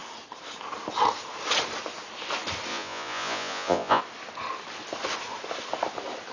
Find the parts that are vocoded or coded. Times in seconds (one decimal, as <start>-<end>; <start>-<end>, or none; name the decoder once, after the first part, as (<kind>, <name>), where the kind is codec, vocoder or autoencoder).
2.7-4.0 (vocoder, Vocos)